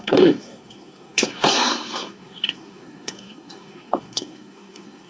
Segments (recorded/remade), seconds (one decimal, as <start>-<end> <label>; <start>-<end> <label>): 0.0-5.1 remade